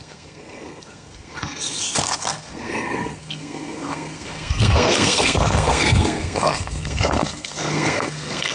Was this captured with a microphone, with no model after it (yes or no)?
no